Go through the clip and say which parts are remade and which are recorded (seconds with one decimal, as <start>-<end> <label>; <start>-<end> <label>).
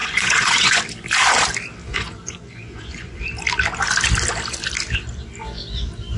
0.0-0.8 remade; 0.8-1.9 recorded; 1.9-3.2 remade; 3.2-6.2 recorded